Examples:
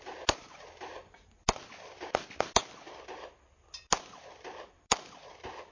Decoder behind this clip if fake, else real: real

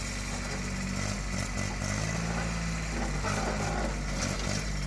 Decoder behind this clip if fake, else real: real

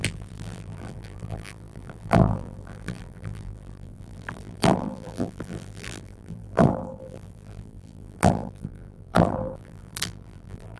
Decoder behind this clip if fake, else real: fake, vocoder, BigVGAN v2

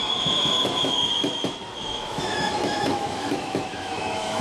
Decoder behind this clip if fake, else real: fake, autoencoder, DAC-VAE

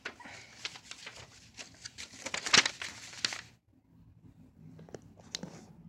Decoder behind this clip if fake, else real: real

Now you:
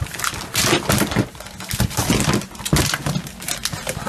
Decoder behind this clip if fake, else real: real